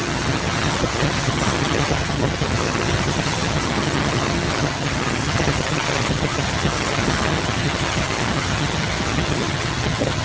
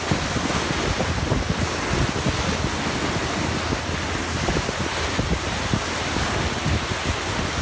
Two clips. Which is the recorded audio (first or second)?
second